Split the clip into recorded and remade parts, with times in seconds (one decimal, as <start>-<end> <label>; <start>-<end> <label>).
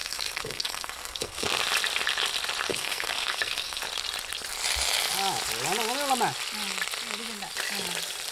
0.0-1.5 remade; 1.5-2.7 recorded; 2.7-3.8 remade; 3.8-8.3 recorded